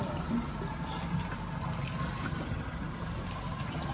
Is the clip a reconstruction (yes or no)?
no